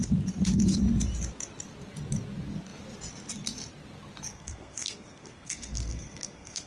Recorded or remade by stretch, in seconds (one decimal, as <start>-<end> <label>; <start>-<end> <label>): 0.0-4.3 recorded; 4.3-6.7 remade